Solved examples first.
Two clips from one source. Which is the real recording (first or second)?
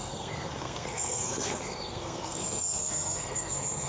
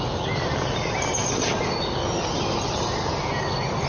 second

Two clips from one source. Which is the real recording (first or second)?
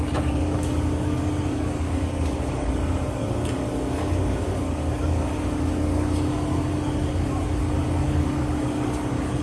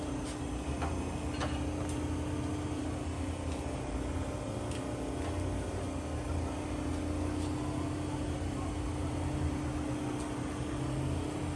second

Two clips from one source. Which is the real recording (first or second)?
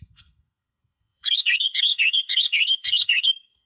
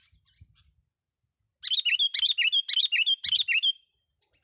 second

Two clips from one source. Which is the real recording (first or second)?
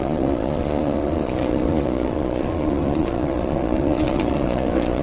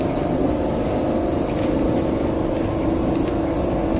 second